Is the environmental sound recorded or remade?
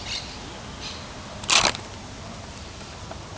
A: recorded